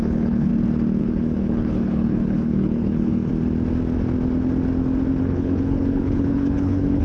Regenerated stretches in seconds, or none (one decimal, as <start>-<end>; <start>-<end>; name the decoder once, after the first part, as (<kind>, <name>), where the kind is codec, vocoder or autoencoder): 0.0-0.5 (codec, HILCodec); 1.0-3.3; 5.2-7.0